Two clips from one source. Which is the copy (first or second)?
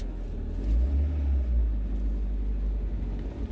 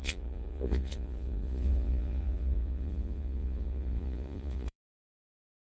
second